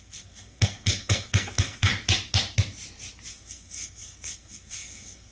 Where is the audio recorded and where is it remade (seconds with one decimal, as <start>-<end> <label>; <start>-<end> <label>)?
0.0-1.9 remade; 1.9-3.3 recorded; 3.3-5.3 remade